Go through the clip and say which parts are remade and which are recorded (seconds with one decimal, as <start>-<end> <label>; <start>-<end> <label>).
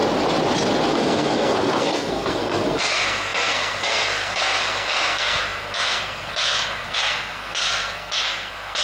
0.0-0.9 recorded; 0.9-8.8 remade